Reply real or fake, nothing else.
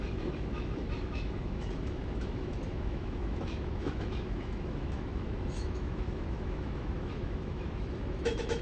fake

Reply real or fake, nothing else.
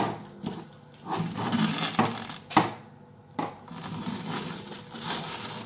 real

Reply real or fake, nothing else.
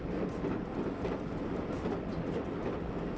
real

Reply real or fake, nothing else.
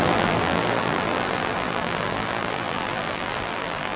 fake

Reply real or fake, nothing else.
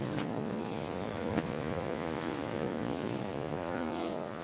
fake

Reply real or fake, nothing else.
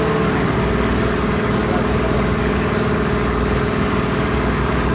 fake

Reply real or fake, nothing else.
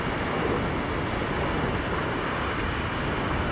real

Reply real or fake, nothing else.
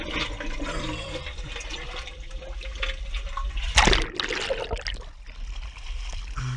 real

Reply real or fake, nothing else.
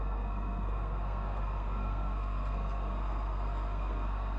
fake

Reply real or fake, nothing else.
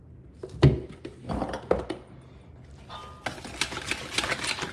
real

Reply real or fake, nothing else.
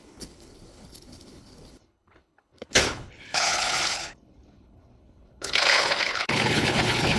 fake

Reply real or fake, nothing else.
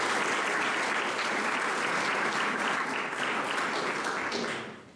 real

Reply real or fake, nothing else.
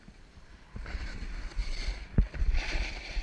real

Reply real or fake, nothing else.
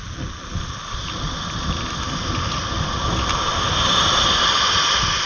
real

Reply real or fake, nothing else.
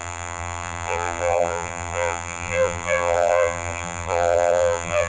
fake